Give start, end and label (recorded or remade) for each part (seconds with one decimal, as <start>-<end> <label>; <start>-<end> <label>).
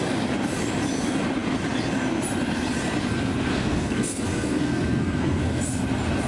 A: 0.0-3.5 recorded; 3.5-5.6 remade; 5.6-6.3 recorded